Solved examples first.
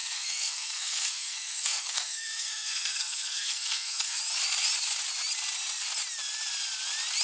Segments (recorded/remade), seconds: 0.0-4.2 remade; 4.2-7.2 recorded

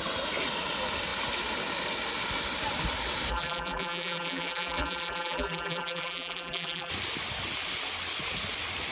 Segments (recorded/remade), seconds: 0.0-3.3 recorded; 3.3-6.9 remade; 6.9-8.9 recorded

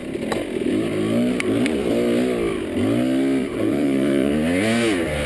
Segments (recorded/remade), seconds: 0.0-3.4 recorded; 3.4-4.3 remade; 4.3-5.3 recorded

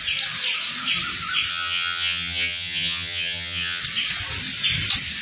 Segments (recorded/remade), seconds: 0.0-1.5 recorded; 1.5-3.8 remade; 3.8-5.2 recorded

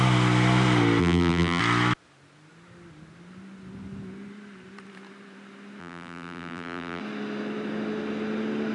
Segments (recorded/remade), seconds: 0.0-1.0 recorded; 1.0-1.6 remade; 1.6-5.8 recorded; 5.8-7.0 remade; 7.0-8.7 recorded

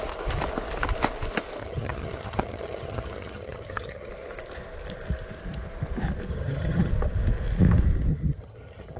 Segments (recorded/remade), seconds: 0.0-1.6 recorded; 1.6-4.1 remade; 4.1-6.3 recorded; 6.3-6.9 remade; 6.9-8.1 recorded; 8.1-9.0 remade